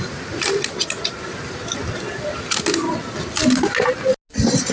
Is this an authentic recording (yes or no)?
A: yes